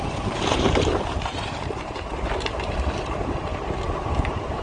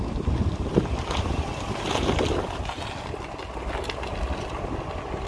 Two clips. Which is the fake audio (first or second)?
first